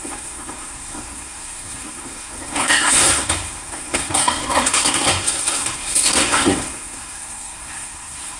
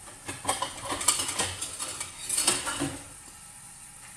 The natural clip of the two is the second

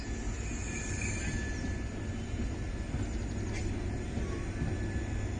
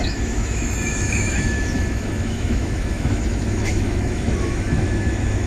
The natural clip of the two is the first